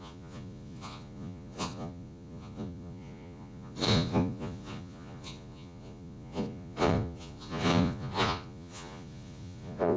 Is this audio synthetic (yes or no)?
yes